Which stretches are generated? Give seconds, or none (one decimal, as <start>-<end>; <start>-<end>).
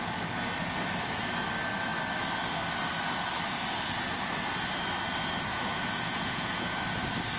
5.5-6.8